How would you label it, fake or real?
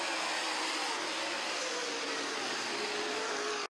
real